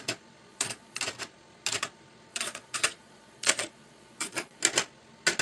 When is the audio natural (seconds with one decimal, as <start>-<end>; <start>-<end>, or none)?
0.0-0.5; 1.0-2.3; 4.6-5.4